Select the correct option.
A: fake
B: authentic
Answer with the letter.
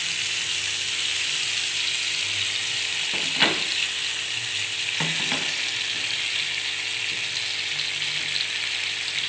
B